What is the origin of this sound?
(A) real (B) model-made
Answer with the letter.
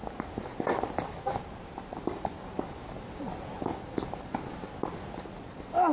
A